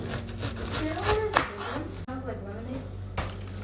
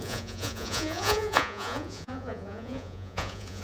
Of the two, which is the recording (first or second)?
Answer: first